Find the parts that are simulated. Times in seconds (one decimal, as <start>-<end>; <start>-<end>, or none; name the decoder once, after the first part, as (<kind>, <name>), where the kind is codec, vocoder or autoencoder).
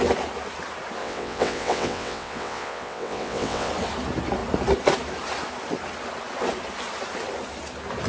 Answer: 1.0-3.7 (vocoder, WaveNeXt)